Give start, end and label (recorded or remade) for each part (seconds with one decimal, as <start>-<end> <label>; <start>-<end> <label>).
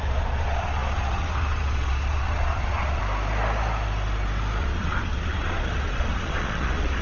0.0-3.0 remade; 3.0-4.6 recorded; 4.6-7.0 remade